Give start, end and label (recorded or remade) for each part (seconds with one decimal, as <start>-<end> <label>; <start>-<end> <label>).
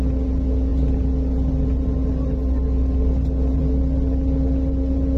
0.0-5.2 recorded